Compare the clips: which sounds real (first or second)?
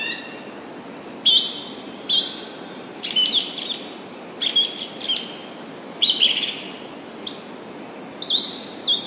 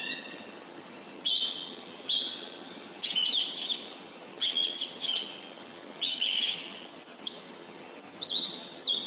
first